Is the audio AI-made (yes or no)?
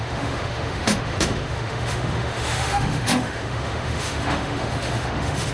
yes